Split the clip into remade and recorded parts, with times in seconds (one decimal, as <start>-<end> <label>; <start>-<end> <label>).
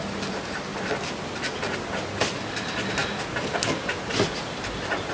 0.0-5.1 recorded